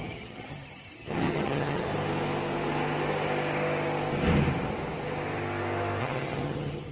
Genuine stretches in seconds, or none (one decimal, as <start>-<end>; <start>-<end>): 1.9-6.0